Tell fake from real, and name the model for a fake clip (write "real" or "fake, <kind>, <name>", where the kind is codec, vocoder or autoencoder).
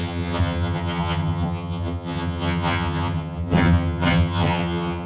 fake, vocoder, HiFi-GAN